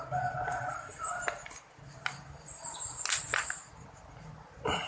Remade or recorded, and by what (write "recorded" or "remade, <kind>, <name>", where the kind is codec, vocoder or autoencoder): recorded